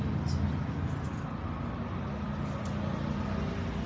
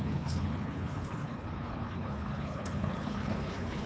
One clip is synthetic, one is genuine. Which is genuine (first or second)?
first